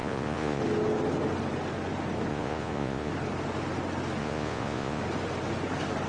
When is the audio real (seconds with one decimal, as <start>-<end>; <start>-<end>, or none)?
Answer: 0.6-2.3; 3.1-4.2; 5.0-6.1